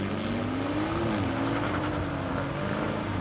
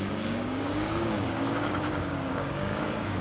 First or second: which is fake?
second